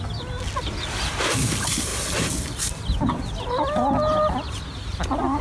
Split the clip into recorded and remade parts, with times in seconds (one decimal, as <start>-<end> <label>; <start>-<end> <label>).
0.0-5.4 recorded